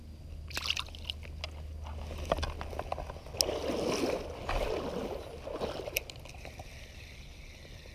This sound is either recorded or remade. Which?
recorded